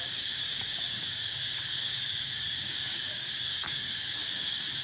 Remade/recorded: remade